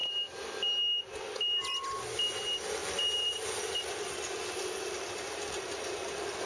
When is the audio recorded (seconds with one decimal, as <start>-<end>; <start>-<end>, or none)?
0.6-2.8; 3.6-6.5